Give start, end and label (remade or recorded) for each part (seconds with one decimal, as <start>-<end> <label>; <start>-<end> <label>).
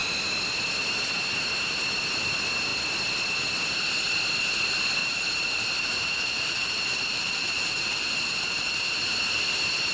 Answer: 0.0-5.0 recorded; 5.0-9.1 remade; 9.1-9.9 recorded